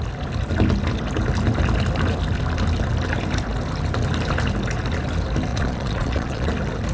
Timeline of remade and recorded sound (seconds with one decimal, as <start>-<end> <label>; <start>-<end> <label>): 0.0-5.5 recorded; 5.5-6.5 remade; 6.5-6.9 recorded